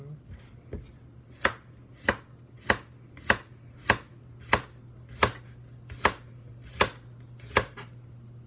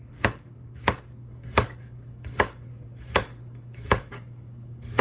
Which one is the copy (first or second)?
second